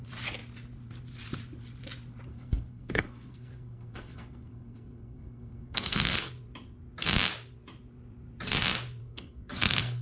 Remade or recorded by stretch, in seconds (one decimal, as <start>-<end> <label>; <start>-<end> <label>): 0.0-2.3 recorded; 2.3-6.3 remade; 6.3-9.0 recorded; 9.0-10.0 remade